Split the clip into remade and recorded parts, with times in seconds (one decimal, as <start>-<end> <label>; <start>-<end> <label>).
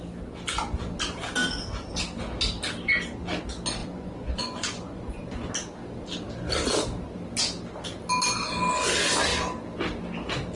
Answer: 0.0-3.8 recorded; 3.8-5.5 remade; 5.5-10.6 recorded